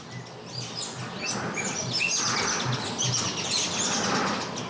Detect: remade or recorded recorded